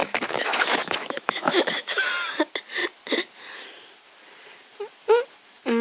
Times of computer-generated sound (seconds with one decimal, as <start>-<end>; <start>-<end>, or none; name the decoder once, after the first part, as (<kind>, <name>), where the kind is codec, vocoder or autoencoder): 0.0-2.1 (autoencoder, DAC-VAE)